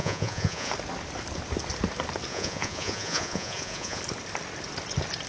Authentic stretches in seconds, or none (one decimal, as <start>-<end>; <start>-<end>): 0.7-2.3; 4.0-5.3